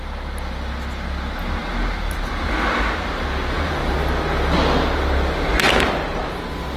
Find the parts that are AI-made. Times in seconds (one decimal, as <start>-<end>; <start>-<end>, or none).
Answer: none